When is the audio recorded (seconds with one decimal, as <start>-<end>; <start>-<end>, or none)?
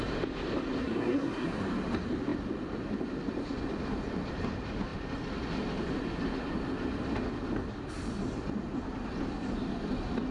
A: 0.0-0.8; 1.6-10.3